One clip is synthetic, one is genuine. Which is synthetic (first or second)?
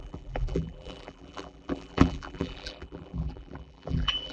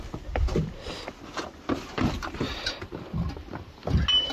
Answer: first